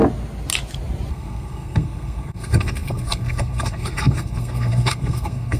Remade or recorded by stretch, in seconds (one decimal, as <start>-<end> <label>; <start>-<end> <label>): 0.0-1.1 recorded; 1.1-5.6 remade